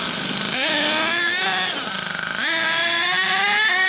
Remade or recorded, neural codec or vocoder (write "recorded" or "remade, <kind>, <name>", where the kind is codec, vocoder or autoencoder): recorded